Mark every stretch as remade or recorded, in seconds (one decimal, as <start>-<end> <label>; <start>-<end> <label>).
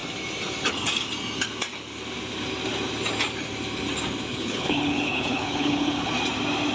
0.0-4.3 recorded; 4.3-6.1 remade; 6.1-6.7 recorded